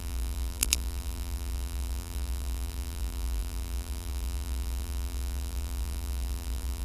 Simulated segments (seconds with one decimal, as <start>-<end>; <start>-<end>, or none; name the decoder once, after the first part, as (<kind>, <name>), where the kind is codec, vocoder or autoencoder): 0.0-6.8 (vocoder, BigVGAN v2)